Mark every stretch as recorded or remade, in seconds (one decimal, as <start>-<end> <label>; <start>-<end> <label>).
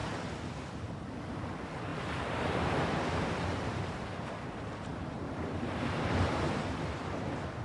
0.0-1.9 recorded; 1.9-6.5 remade; 6.5-7.6 recorded